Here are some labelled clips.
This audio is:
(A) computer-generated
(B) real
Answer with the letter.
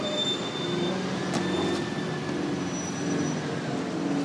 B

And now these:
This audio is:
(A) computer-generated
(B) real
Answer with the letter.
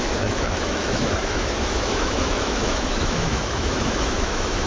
A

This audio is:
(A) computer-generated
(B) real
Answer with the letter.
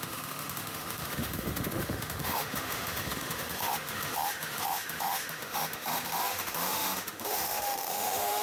A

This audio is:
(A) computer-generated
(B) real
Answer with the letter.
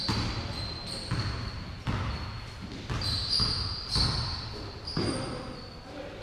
B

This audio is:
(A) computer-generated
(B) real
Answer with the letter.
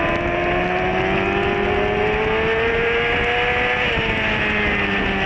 B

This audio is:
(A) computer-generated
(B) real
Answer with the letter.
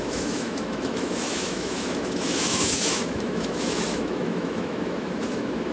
A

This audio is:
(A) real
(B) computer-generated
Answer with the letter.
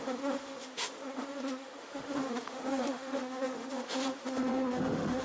B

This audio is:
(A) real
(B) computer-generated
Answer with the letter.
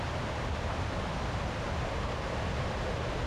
A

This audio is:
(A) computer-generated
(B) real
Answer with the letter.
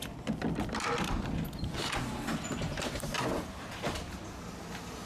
B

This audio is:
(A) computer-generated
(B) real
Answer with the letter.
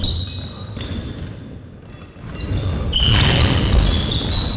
B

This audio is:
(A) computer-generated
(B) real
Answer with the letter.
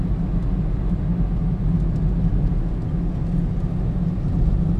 B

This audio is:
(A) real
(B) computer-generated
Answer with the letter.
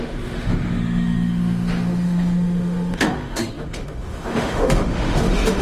B